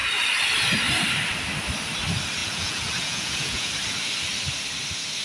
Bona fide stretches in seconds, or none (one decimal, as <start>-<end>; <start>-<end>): 0.0-2.4; 3.7-5.2